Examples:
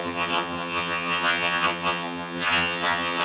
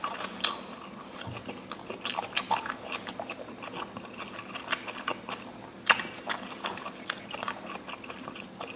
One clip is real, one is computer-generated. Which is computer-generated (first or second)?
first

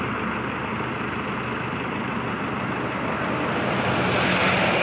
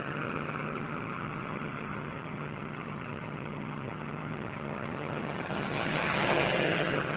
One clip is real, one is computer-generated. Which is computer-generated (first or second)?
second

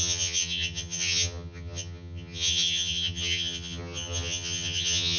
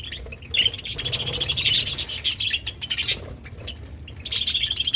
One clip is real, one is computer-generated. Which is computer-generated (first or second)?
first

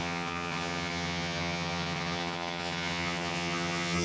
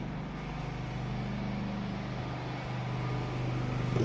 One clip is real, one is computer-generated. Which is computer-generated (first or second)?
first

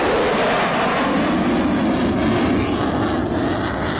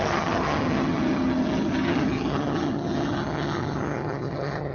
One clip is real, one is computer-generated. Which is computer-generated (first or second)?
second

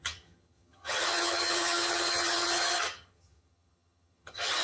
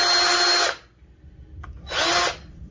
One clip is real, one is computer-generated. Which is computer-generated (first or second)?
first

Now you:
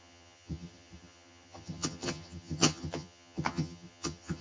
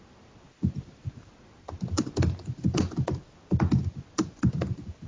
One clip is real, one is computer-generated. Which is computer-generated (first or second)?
first